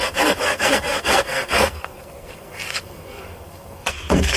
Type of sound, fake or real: fake